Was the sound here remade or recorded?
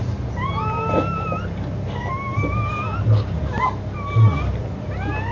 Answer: recorded